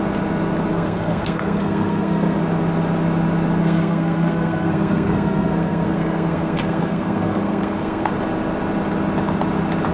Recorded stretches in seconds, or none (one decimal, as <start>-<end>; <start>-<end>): 0.0-0.7; 2.4-3.6; 8.1-9.9